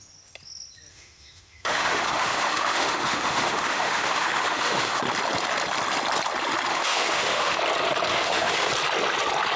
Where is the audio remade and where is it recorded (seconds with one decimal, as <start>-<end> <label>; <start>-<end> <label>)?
0.0-0.9 recorded; 0.9-5.0 remade; 5.0-6.7 recorded; 6.7-7.6 remade; 7.6-8.1 recorded; 8.1-8.7 remade; 8.7-9.6 recorded